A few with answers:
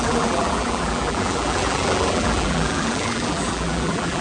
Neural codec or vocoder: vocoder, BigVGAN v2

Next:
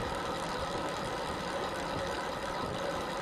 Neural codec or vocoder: none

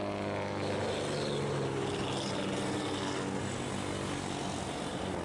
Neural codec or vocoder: none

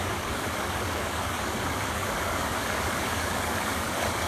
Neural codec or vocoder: codec, DAC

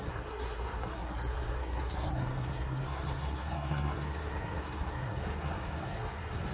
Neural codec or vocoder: codec, SNAC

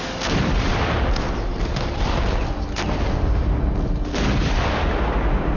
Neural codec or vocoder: none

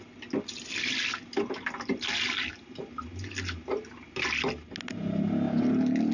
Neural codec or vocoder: none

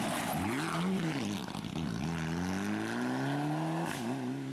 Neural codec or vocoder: none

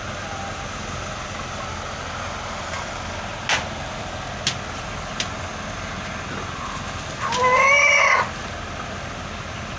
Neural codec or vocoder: none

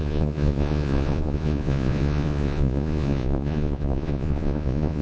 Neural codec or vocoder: vocoder, Vocos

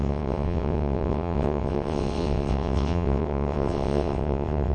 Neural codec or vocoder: vocoder, WaveNeXt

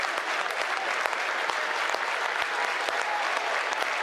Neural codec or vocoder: none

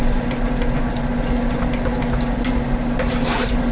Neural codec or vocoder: none